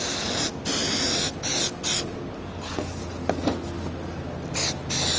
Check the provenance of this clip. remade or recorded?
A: recorded